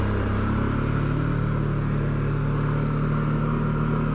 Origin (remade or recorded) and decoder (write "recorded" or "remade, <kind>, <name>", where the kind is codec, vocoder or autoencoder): recorded